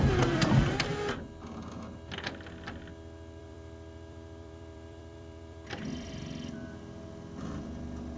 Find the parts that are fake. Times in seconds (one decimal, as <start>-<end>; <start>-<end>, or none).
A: 0.0-0.8; 3.4-6.2